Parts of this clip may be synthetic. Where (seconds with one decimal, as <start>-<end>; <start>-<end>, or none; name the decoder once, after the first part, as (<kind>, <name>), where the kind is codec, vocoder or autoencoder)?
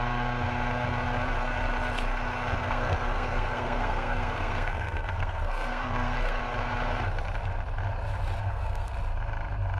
2.6-6.4 (codec, SNAC); 8.4-8.9